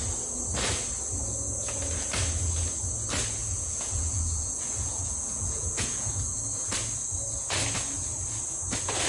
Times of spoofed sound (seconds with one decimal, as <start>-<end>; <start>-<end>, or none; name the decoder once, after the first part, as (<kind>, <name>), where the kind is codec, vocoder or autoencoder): 3.4-6.4 (vocoder, Vocos)